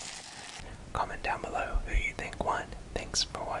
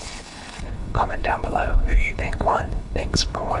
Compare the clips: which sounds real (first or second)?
first